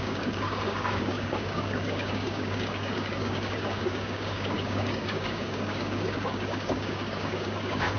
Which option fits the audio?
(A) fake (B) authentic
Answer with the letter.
A